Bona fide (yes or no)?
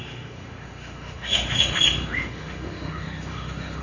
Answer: no